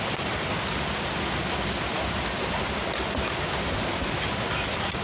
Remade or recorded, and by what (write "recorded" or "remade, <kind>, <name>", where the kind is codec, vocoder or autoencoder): recorded